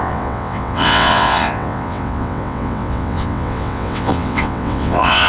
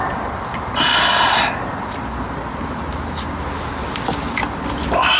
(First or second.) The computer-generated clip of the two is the first